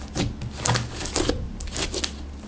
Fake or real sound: real